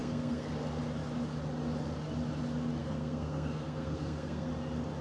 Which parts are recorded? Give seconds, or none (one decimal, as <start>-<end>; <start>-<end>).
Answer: 0.5-2.8; 4.5-5.0